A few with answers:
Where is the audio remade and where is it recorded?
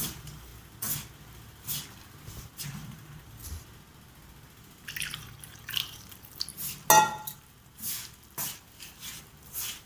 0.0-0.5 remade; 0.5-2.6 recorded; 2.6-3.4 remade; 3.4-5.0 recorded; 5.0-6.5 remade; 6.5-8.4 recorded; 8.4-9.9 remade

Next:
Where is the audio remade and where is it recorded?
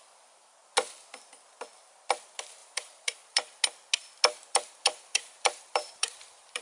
0.0-2.6 recorded; 2.6-3.6 remade; 3.6-4.4 recorded; 4.4-6.6 remade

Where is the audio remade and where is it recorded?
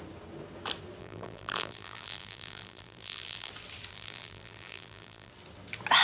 0.0-1.0 recorded; 1.0-3.5 remade; 3.5-3.9 recorded; 3.9-5.3 remade; 5.3-6.0 recorded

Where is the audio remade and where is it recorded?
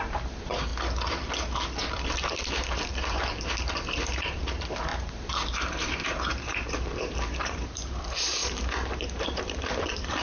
0.0-0.7 remade; 0.7-2.2 recorded; 2.2-10.2 remade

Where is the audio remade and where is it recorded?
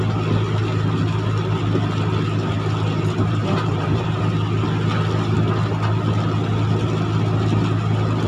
0.0-3.2 recorded; 3.2-4.2 remade; 4.2-8.3 recorded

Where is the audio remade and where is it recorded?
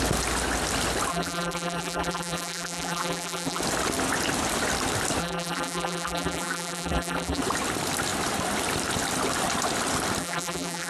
0.0-1.1 recorded; 1.1-3.6 remade; 3.6-5.2 recorded; 5.2-7.4 remade; 7.4-10.2 recorded; 10.2-10.9 remade